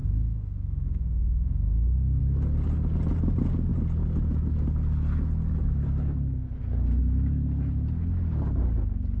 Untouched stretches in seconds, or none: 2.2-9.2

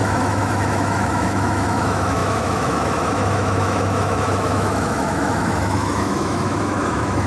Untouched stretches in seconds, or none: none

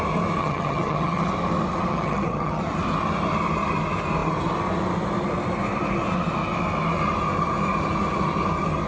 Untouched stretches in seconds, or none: 0.0-0.4; 1.3-1.9; 2.6-8.9